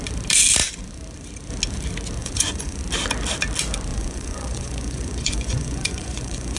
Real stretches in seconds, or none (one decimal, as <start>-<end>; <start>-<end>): 0.0-2.2; 2.8-3.9

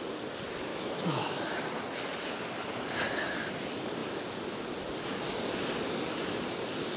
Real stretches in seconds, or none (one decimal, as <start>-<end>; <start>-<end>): 0.0-0.7; 1.7-7.0